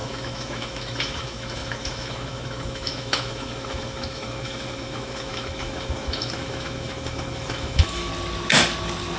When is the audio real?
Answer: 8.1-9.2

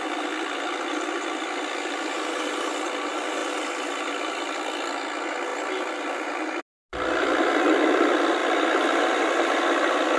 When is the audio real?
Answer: 0.0-10.2

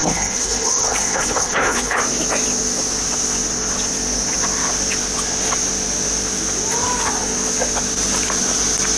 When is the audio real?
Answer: 2.0-9.0

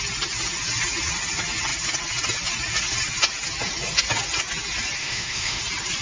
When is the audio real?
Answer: 0.0-5.0; 5.6-6.0